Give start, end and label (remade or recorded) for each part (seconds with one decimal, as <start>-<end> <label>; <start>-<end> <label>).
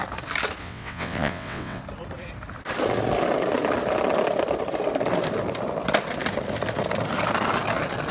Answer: 0.0-0.6 recorded; 0.6-1.8 remade; 1.8-8.1 recorded